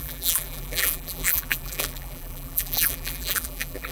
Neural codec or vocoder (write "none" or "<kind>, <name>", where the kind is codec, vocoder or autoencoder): vocoder, BigVGAN v2